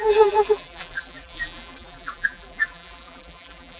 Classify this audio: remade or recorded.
remade